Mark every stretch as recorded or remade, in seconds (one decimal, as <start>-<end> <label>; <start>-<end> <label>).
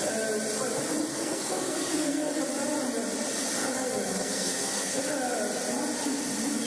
0.0-1.1 recorded; 1.1-2.4 remade; 2.4-3.6 recorded; 3.6-5.0 remade; 5.0-6.7 recorded